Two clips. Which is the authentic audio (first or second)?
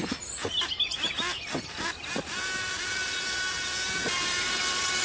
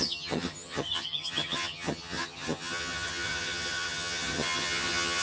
first